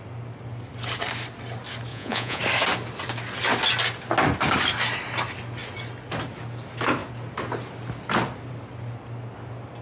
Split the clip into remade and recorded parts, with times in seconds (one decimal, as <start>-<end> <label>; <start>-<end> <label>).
0.0-1.9 recorded; 1.9-2.4 remade; 2.4-9.8 recorded